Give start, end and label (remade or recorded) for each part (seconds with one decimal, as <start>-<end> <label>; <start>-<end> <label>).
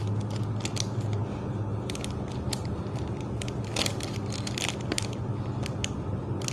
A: 0.0-6.5 recorded